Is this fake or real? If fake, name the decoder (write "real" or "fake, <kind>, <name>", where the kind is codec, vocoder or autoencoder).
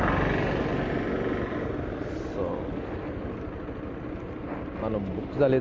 real